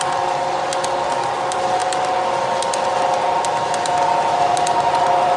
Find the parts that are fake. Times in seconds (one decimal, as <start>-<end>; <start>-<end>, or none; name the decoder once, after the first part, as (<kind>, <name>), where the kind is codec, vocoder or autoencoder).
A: none